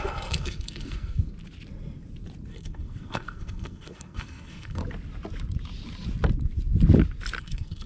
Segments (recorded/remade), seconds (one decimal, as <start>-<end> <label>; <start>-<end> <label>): 0.0-1.3 remade; 1.3-2.5 recorded; 2.5-4.8 remade; 4.8-7.4 recorded; 7.4-7.9 remade